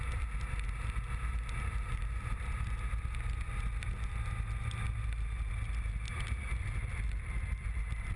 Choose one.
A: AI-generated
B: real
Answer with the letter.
B